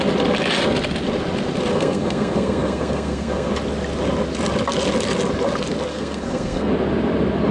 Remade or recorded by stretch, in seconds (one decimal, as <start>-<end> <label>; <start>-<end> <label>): 0.0-1.7 recorded; 1.7-3.5 remade; 3.5-5.9 recorded; 5.9-6.7 remade; 6.7-7.5 recorded